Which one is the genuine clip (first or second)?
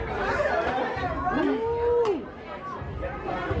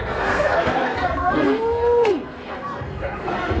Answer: first